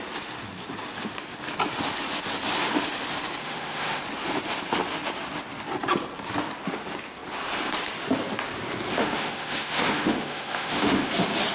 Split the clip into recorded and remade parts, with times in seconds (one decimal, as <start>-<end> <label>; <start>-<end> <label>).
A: 0.0-3.4 recorded; 3.4-4.0 remade; 4.0-8.9 recorded; 8.9-11.1 remade; 11.1-11.5 recorded

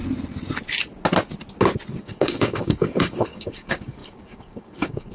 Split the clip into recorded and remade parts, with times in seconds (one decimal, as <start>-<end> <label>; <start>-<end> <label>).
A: 0.0-2.0 recorded; 2.0-5.1 remade

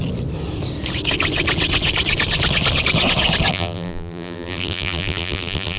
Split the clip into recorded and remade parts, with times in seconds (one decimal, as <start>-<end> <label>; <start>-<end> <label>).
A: 0.0-3.5 recorded; 3.5-5.8 remade

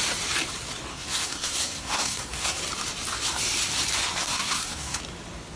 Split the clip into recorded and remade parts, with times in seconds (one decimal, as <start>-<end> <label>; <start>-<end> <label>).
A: 0.0-0.9 recorded; 0.9-2.6 remade; 2.6-4.2 recorded; 4.2-5.0 remade; 5.0-5.6 recorded